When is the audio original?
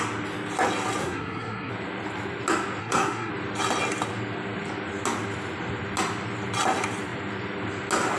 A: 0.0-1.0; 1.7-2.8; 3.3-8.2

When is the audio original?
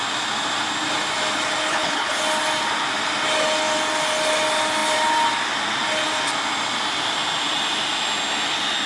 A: 0.0-1.7; 2.2-8.9